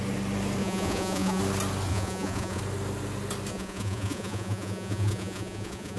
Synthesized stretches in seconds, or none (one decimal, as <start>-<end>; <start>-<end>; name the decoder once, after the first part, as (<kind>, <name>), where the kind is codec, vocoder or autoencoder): 0.6-1.4 (vocoder, Vocos); 1.9-2.6; 3.5-6.0